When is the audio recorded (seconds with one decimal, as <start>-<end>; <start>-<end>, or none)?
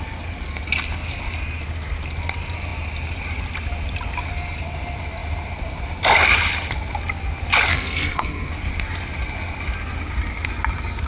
0.0-7.7; 8.5-11.1